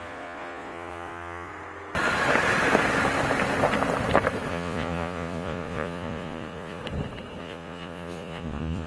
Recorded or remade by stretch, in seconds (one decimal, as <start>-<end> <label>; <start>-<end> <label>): 0.0-1.5 remade; 1.5-4.5 recorded; 4.5-6.8 remade; 6.8-7.4 recorded; 7.4-8.9 remade